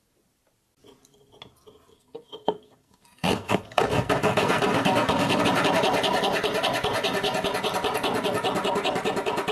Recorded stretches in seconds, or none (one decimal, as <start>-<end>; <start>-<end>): 0.0-1.9; 5.4-9.5